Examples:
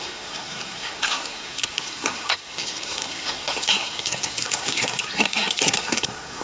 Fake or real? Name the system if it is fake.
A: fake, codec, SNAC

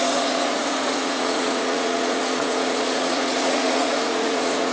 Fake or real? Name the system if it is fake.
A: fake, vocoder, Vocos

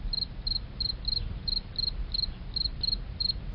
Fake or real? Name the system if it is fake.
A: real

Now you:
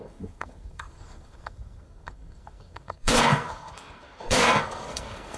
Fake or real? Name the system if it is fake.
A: fake, codec, SNAC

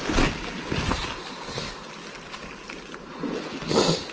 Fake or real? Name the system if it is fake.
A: real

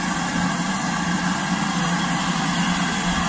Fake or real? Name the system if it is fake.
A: real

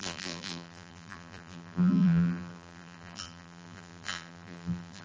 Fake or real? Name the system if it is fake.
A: fake, vocoder, BigVGAN v2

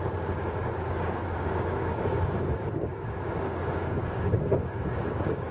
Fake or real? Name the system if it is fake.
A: fake, codec, DAC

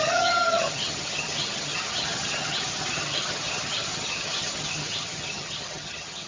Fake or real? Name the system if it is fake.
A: fake, vocoder, HiFi-GAN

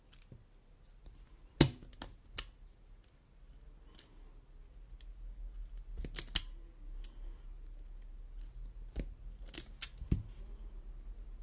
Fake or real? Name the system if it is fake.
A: real